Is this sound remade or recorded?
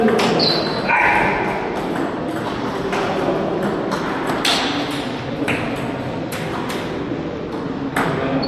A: recorded